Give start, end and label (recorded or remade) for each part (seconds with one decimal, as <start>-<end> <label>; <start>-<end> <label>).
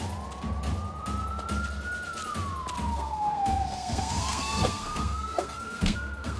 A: 0.0-2.9 recorded; 2.9-6.4 remade